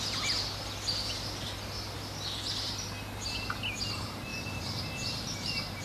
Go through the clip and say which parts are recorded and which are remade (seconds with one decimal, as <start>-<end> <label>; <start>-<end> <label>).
0.0-4.3 recorded; 4.3-5.8 remade